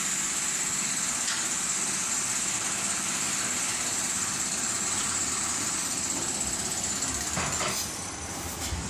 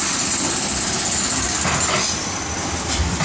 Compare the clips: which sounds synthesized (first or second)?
first